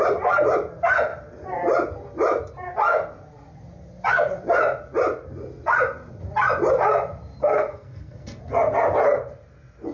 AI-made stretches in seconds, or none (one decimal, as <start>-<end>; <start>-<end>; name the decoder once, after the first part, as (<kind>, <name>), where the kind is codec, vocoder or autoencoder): 7.4-8.4 (codec, SNAC)